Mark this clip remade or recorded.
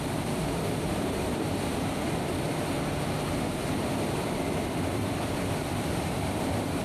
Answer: remade